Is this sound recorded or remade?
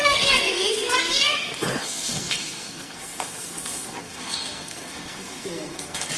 remade